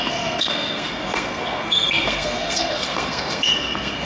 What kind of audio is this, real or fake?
fake